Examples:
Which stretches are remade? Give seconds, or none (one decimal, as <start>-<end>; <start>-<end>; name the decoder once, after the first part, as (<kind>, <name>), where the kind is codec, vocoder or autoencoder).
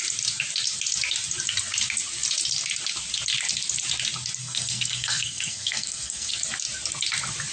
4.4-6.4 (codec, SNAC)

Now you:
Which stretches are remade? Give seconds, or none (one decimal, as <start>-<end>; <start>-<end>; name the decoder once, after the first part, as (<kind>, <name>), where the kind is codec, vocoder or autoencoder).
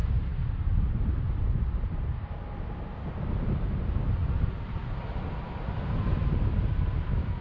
none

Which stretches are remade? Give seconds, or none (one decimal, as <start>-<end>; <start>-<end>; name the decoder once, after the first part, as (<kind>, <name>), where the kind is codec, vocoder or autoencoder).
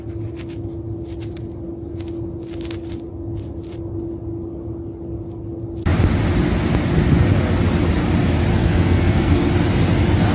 8.5-9.5 (codec, SNAC)